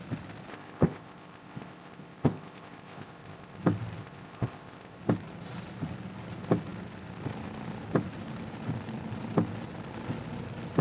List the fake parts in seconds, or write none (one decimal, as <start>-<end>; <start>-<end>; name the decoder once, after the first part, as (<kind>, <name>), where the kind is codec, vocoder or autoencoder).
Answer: 0.5-3.6 (codec, ZipCodec); 4.0-5.0